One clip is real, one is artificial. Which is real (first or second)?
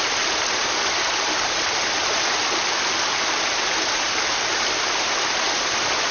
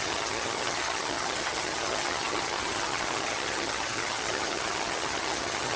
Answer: first